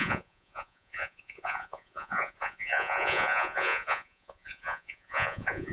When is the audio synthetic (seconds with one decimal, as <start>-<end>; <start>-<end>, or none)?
0.0-5.7